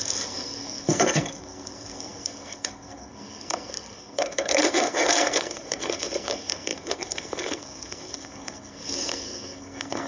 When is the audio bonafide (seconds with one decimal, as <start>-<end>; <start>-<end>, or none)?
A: none